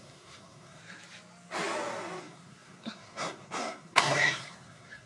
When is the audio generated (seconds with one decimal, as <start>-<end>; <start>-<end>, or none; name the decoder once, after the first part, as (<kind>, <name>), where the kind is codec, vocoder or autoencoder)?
0.0-0.8 (codec, SNAC); 2.2-5.1